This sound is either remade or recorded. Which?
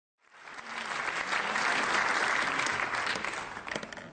recorded